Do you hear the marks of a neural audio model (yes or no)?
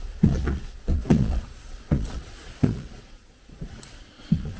yes